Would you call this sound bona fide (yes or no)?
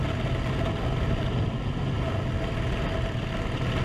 yes